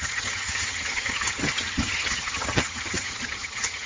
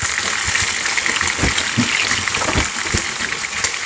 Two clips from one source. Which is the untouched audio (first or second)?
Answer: second